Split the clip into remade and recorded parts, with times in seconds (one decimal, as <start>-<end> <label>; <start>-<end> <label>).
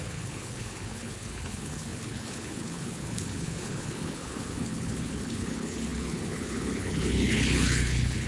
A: 0.0-8.3 remade